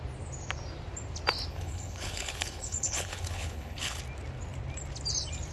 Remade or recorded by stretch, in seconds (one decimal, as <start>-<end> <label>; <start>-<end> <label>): 0.0-1.5 recorded; 1.5-4.0 remade; 4.0-5.5 recorded